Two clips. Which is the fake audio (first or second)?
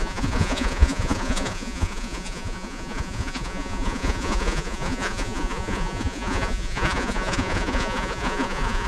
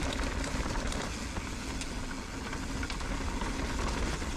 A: first